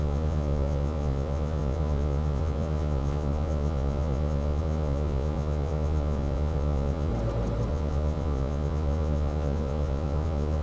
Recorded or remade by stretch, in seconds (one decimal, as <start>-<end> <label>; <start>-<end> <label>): 0.0-7.1 remade; 7.1-7.7 recorded; 7.7-10.6 remade